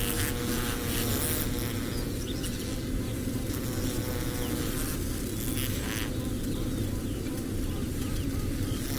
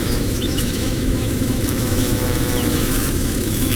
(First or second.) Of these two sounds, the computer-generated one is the second